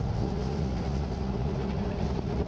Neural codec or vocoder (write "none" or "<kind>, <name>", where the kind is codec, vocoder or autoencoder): vocoder, Vocos